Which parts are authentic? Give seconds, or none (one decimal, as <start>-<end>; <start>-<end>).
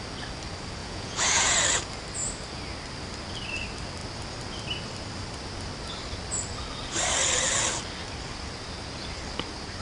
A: 0.0-0.8; 1.6-9.8